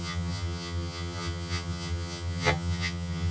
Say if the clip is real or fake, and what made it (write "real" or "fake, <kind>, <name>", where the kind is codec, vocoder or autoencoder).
fake, vocoder, HiFi-GAN